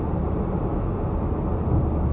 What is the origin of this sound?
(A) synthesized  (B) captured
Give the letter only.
B